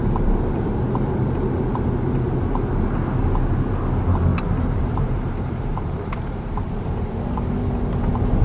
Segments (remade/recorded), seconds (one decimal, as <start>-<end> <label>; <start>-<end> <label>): 0.0-0.8 remade; 0.8-4.3 recorded; 4.3-7.5 remade; 7.5-8.4 recorded